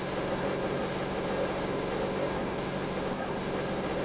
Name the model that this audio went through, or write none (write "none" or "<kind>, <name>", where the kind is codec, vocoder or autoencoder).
codec, SNAC